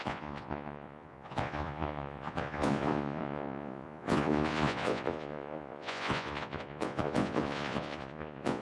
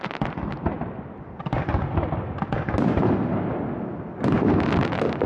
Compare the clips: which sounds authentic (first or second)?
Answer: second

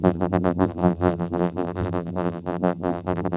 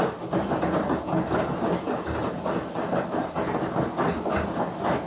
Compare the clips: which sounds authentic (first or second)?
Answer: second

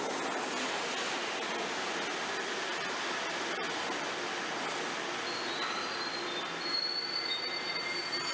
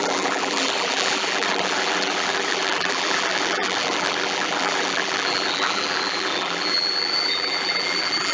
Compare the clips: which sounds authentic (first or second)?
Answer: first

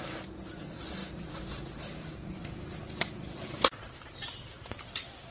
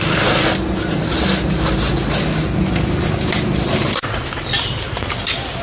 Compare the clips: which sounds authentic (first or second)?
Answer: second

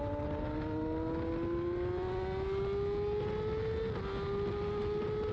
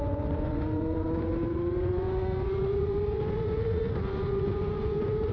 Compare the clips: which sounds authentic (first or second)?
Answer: first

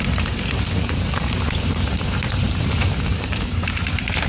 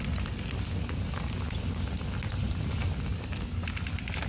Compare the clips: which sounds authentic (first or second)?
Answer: second